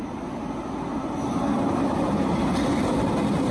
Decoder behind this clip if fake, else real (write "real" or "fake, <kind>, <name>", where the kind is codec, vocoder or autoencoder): real